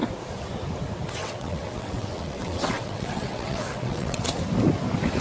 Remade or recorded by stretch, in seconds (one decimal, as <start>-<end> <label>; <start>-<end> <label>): 0.0-1.2 recorded; 1.2-4.3 remade; 4.3-5.2 recorded